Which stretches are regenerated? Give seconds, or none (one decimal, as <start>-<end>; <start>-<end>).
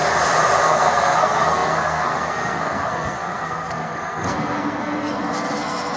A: 0.6-6.0